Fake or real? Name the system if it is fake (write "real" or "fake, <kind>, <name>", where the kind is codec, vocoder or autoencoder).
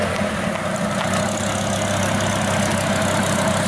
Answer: real